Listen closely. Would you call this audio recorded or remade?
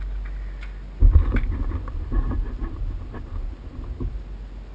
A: recorded